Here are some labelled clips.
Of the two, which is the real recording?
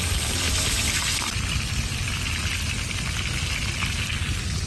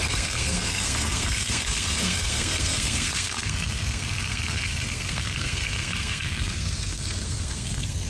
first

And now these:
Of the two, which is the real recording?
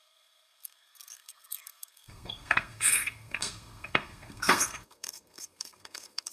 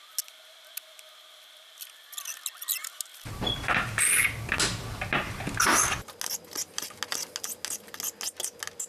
second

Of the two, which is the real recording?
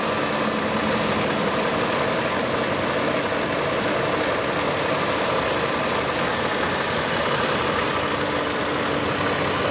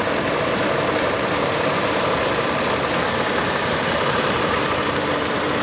first